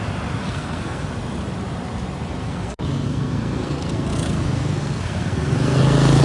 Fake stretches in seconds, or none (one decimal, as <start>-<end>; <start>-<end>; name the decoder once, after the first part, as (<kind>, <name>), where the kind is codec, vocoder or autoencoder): 0.4-1.1 (codec, SNAC); 2.4-6.2